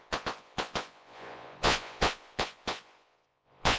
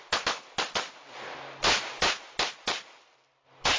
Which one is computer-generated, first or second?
first